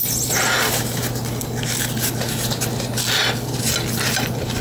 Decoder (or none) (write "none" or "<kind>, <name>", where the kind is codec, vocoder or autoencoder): none